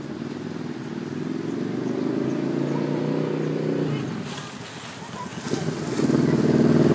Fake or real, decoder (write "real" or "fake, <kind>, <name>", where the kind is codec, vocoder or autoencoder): real